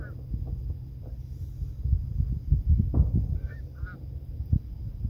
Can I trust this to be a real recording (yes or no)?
yes